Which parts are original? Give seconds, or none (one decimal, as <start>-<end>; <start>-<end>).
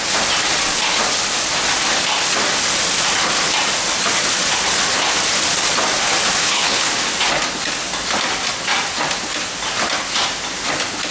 0.0-6.4; 6.9-11.1